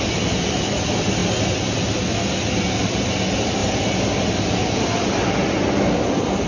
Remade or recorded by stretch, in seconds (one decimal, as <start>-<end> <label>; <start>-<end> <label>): 0.0-1.2 remade; 1.2-2.2 recorded; 2.2-3.6 remade; 3.6-6.0 recorded; 6.0-6.5 remade